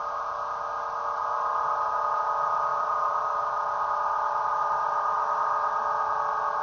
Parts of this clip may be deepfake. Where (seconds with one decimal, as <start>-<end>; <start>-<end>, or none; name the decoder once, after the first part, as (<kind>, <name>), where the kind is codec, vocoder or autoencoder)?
1.2-2.3 (vocoder, BigVGAN v2); 2.7-3.5; 4.5-5.2

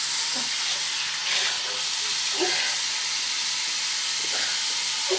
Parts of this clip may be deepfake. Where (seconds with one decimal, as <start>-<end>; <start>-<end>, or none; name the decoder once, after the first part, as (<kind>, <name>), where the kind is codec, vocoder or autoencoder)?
4.2-4.7 (vocoder, BigVGAN v2)

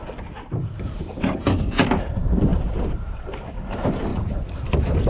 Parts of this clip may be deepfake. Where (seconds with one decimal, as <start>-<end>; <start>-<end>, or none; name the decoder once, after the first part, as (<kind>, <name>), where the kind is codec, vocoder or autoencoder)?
2.5-3.5 (vocoder, BigVGAN v2); 4.1-5.1

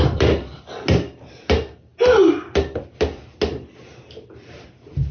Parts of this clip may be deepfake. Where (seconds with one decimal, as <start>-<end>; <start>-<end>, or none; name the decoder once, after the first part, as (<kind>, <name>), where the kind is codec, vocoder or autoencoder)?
none

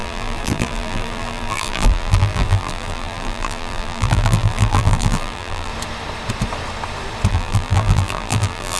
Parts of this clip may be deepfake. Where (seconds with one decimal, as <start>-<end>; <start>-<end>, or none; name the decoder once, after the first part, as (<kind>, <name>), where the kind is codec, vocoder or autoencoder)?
0.0-5.7 (vocoder, BigVGAN v2); 7.3-8.8

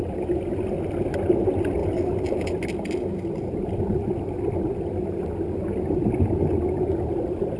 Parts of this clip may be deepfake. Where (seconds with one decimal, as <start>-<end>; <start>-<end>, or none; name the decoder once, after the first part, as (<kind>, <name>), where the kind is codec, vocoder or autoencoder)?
none

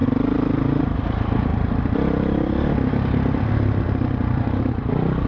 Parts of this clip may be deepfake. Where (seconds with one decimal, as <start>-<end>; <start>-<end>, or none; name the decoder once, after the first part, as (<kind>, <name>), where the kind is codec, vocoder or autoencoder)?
0.0-5.3 (vocoder, BigVGAN v2)